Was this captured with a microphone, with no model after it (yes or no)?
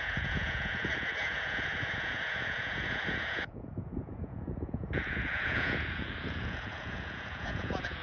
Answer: no